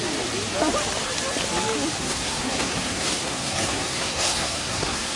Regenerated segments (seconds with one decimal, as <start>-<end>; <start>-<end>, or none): 2.0-5.2